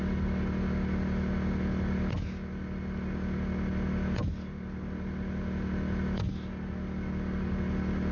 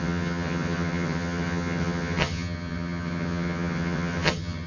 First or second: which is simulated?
second